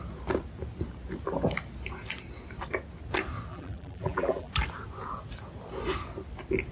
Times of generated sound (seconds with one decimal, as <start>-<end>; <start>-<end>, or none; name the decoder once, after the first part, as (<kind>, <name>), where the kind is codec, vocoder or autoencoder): 3.5-4.5 (vocoder, BigVGAN v2)